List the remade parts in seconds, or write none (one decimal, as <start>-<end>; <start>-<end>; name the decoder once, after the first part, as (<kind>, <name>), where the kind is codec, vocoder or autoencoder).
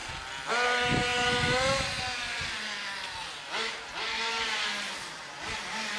none